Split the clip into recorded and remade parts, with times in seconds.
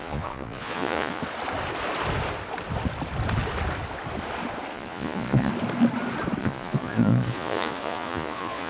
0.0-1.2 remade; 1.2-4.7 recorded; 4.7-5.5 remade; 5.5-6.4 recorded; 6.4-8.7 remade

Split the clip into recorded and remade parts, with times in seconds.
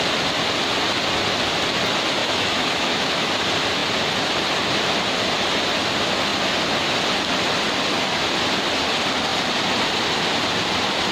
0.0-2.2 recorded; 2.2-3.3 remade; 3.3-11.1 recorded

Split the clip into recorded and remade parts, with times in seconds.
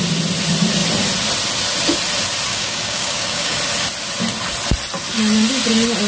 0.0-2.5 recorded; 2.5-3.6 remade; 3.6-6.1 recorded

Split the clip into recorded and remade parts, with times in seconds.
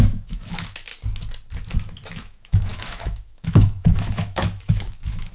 0.0-0.9 remade; 0.9-2.1 recorded; 2.1-5.3 remade